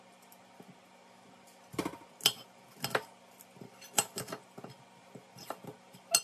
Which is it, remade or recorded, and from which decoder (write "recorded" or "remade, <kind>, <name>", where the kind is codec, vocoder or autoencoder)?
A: recorded